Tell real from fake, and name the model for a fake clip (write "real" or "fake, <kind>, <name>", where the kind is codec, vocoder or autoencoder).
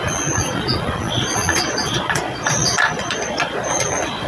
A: fake, vocoder, Vocos